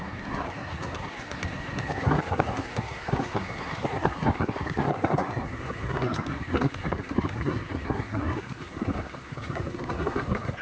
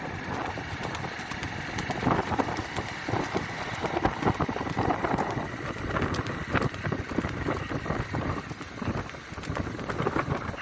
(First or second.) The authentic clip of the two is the second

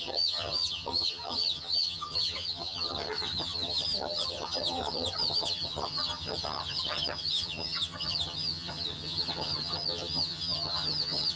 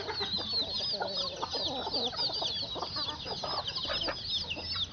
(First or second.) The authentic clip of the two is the second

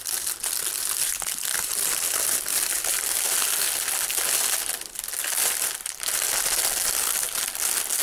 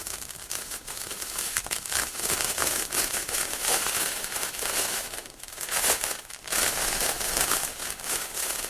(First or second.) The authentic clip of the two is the first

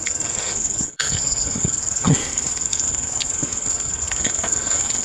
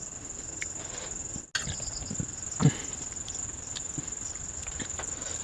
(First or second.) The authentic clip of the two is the second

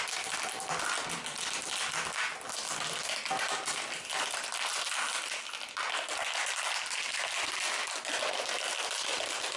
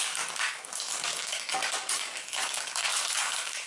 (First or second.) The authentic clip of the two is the first